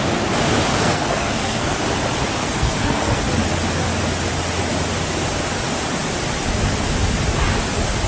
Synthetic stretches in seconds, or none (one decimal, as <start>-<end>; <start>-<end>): 0.7-1.8; 2.4-3.2